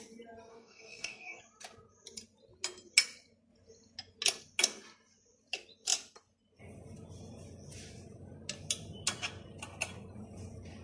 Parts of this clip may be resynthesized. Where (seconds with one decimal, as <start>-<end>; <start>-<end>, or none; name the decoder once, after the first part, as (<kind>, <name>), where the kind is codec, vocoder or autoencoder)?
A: 0.5-1.4 (codec, DAC)